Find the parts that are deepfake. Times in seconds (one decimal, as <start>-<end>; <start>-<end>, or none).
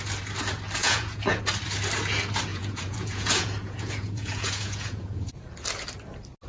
0.8-1.4; 2.5-5.3